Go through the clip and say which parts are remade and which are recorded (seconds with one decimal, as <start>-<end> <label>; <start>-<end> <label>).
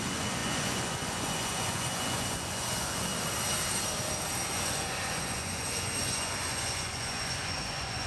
0.0-3.1 remade; 3.1-4.5 recorded; 4.5-8.1 remade